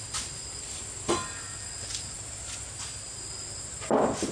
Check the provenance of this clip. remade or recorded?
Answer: remade